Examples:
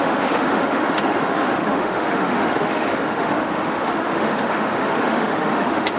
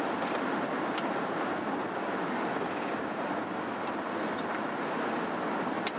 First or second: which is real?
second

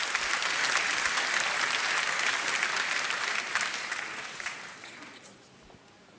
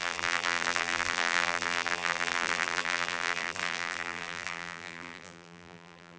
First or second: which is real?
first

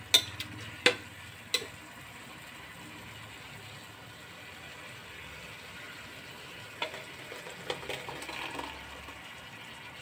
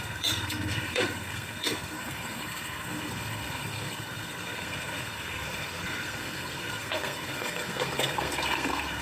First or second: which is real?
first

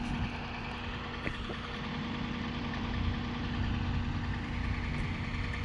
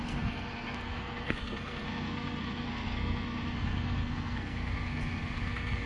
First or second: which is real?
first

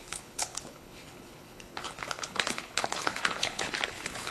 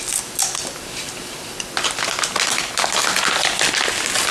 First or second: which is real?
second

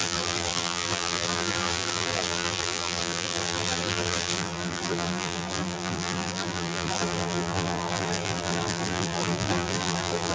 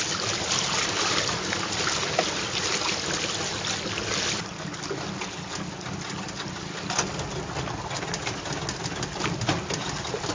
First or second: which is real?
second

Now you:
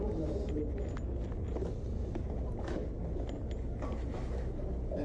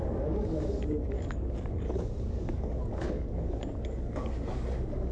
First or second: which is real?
first